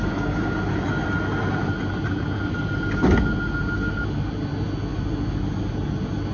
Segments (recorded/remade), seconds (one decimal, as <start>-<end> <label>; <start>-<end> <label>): 0.0-6.3 recorded